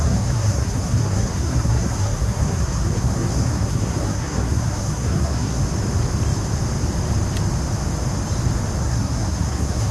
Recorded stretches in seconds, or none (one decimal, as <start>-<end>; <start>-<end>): 5.6-8.8